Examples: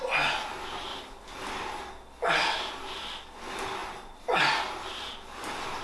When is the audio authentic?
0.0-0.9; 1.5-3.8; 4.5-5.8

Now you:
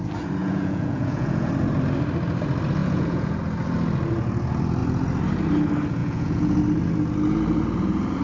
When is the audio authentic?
0.0-0.4; 1.5-2.8; 3.4-6.0; 6.6-8.2

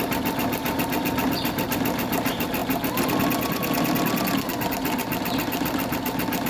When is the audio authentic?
0.0-6.5

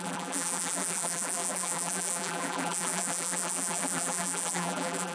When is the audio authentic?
none

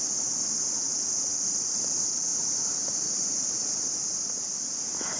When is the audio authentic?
0.0-2.3; 3.9-5.2